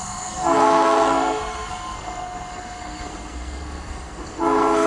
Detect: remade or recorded remade